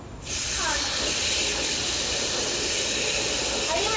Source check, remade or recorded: recorded